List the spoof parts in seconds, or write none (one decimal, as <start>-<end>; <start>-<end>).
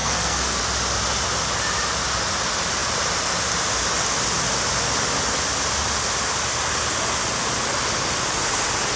0.0-0.6